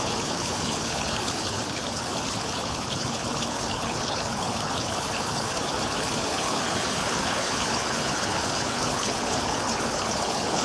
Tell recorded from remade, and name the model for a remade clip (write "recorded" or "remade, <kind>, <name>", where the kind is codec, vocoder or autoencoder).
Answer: remade, codec, HILCodec